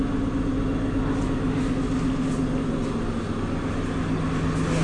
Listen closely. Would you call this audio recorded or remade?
recorded